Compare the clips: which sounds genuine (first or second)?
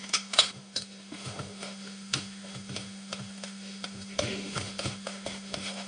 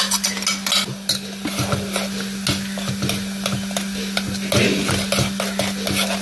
second